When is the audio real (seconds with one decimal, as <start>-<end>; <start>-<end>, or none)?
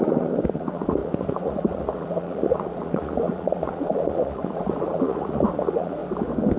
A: 6.0-6.6